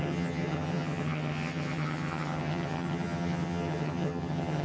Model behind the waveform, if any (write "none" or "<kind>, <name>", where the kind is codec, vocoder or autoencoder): vocoder, HiFi-GAN